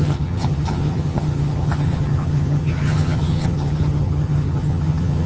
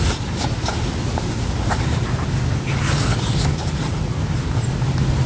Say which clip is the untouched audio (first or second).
second